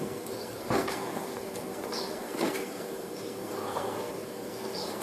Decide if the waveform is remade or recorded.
remade